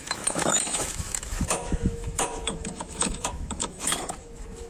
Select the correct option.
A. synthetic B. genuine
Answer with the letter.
A